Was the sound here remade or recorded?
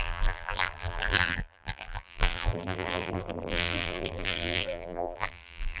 remade